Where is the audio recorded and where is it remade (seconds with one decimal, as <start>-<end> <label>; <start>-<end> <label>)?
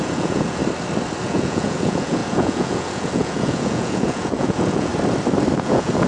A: 0.0-0.6 remade; 0.6-1.2 recorded; 1.2-4.9 remade; 4.9-5.6 recorded; 5.6-6.1 remade